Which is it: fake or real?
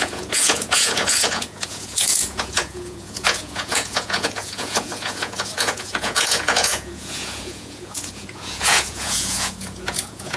fake